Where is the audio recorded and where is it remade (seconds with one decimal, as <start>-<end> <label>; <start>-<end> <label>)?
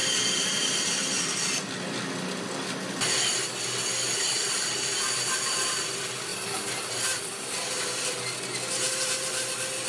0.0-9.9 recorded